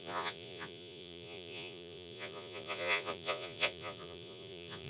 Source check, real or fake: fake